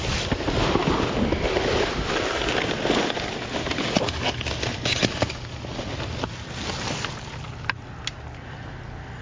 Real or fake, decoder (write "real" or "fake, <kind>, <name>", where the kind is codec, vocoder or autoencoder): real